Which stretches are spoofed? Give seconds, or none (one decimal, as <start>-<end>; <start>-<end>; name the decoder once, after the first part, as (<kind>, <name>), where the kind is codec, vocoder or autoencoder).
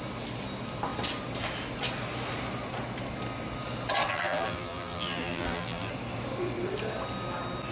4.1-5.9 (vocoder, BigVGAN v2)